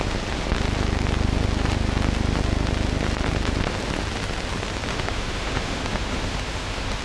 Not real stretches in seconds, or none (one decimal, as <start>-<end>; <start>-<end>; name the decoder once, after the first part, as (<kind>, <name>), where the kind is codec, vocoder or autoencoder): 4.9-7.0 (autoencoder, DAC-VAE)